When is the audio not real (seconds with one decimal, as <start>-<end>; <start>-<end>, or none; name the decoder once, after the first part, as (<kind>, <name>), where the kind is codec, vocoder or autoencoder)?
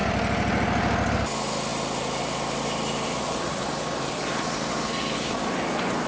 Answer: none